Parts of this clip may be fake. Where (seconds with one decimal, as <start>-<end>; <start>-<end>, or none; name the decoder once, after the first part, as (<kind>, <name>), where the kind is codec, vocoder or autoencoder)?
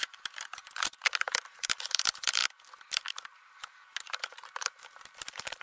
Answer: 0.0-2.4 (vocoder, BigVGAN v2); 3.5-5.6